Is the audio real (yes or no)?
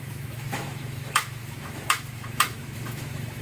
no